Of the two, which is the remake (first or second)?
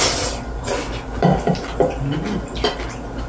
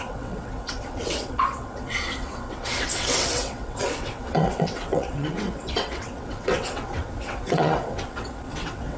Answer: second